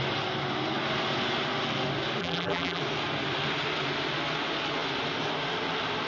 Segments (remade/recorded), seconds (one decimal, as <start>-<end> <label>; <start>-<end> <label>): 0.0-2.2 recorded; 2.2-2.8 remade; 2.8-6.1 recorded